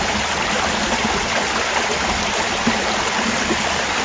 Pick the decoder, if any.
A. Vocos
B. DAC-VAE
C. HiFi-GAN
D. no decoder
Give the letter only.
D